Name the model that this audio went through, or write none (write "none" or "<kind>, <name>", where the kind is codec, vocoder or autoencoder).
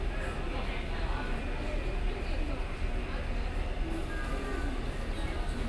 none